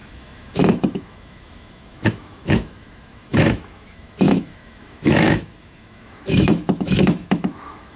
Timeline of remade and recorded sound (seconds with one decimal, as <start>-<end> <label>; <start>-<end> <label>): 0.0-8.0 remade